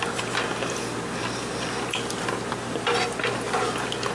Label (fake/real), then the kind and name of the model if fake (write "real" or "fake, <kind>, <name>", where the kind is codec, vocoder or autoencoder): real